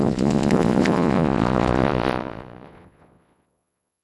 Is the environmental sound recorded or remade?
remade